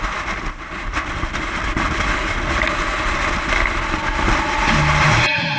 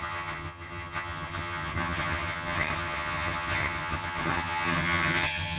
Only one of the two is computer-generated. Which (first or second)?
second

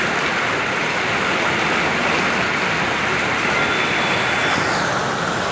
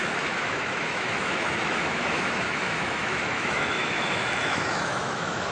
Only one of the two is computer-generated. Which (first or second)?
second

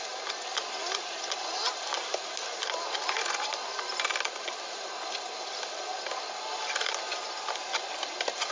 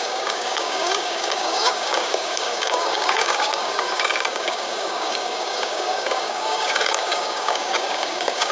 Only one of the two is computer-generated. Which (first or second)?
second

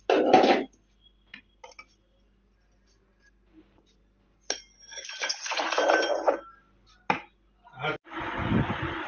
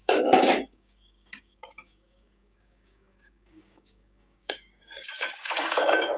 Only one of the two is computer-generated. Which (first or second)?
second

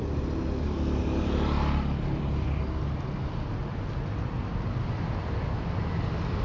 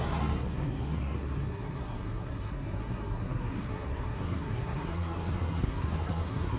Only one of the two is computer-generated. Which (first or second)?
second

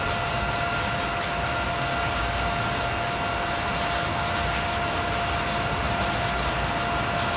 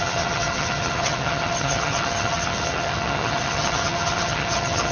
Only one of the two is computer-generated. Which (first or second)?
second